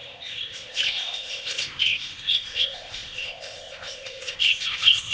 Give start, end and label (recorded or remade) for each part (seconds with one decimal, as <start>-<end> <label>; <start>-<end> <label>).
0.0-5.1 remade